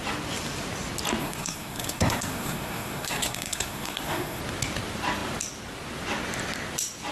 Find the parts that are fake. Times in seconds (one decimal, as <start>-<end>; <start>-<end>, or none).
1.2-4.4

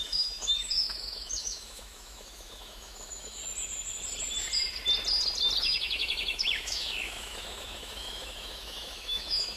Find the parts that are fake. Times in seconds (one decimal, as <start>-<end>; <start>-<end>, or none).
0.0-3.4; 5.6-9.6

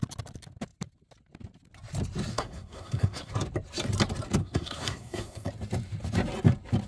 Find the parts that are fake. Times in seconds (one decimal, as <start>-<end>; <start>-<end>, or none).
2.3-3.3; 4.4-5.5

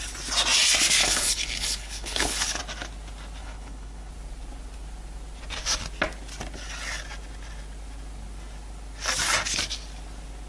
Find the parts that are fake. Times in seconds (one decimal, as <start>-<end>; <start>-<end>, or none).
1.0-2.6; 3.4-4.1

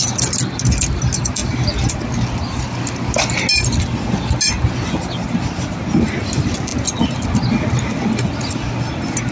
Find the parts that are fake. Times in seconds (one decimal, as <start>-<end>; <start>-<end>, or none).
none

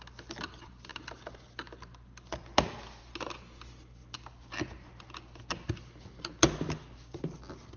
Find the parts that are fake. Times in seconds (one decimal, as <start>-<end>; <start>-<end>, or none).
none

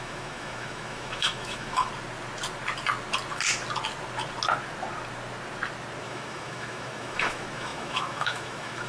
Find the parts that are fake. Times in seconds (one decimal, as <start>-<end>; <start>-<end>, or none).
0.0-1.9; 6.0-8.9